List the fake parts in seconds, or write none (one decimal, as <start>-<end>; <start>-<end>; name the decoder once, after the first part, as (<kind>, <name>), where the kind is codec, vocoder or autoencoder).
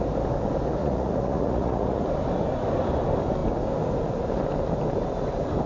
0.8-2.0 (vocoder, Vocos)